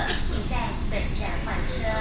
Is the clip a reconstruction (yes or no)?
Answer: no